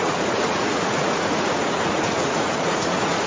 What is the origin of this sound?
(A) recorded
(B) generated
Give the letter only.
B